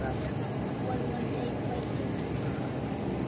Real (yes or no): yes